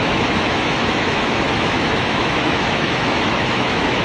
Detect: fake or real fake